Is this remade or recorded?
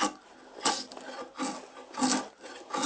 recorded